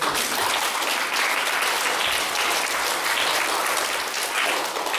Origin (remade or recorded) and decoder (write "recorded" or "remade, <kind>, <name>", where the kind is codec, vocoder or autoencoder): recorded